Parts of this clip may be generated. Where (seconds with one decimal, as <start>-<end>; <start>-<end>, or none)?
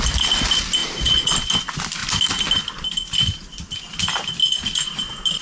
0.8-1.5